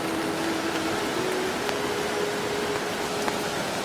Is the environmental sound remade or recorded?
recorded